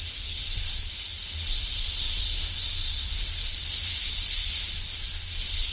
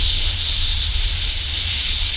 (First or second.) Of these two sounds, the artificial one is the second